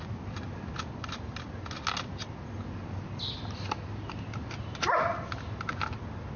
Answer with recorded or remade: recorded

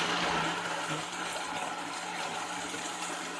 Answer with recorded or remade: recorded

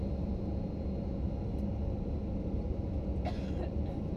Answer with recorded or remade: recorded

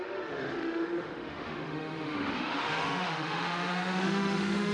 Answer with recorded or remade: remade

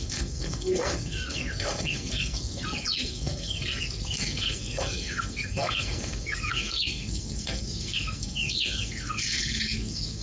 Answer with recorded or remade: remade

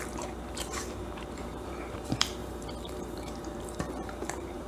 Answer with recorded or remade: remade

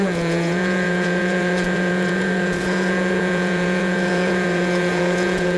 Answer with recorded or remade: remade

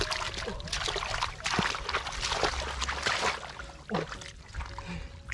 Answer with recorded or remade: recorded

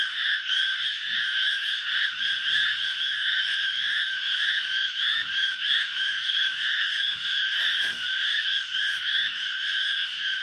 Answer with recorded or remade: remade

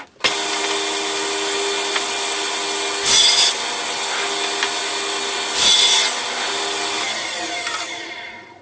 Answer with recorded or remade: recorded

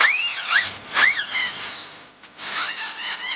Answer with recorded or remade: recorded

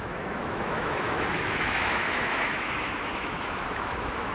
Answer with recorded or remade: remade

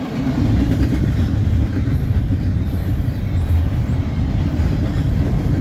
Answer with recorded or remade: remade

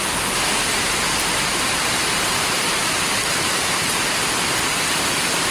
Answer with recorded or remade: recorded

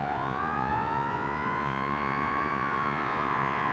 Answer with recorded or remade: remade